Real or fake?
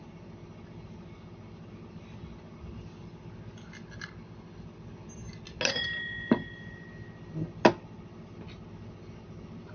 real